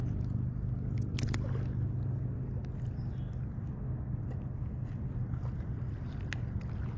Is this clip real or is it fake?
real